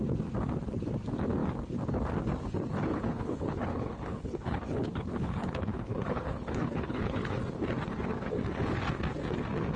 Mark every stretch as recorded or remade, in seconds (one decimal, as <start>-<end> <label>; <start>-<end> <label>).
0.0-2.9 recorded; 2.9-7.4 remade; 7.4-9.8 recorded